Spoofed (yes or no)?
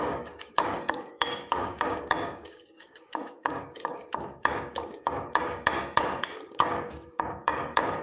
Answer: yes